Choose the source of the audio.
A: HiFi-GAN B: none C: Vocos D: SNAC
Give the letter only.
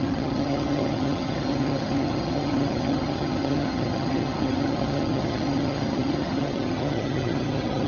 A